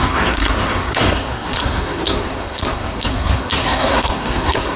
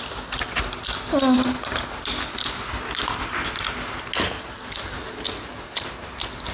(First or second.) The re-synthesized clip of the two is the first